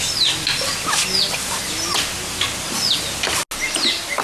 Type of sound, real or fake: real